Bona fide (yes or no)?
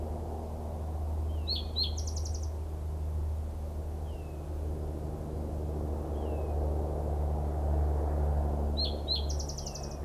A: yes